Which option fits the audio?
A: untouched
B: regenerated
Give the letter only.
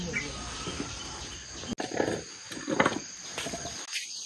A